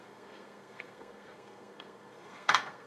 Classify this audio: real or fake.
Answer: fake